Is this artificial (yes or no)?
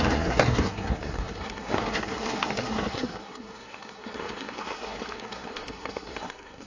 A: yes